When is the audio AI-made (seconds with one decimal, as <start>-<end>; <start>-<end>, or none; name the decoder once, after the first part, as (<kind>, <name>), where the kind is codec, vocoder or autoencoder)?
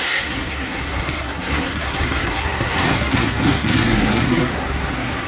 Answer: 0.0-5.3 (codec, SNAC)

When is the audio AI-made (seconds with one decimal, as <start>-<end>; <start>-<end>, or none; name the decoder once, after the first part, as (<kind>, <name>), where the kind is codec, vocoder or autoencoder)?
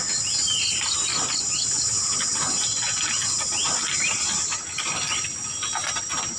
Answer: none